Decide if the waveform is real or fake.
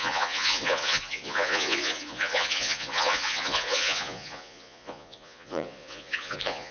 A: fake